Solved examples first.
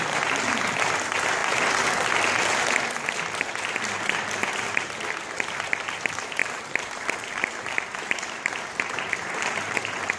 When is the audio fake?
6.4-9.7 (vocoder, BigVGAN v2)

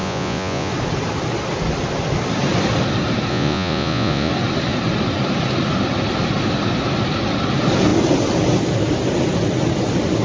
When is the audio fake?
0.0-0.7 (vocoder, Vocos); 3.3-4.3

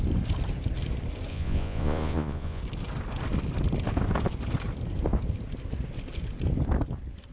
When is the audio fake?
1.3-2.6 (vocoder, Vocos)